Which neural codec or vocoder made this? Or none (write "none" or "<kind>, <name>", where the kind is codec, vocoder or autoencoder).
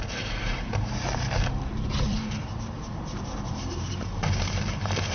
vocoder, BigVGAN v2